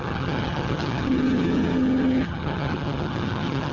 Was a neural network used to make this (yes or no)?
yes